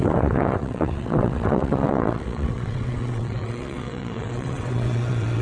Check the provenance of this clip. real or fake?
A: fake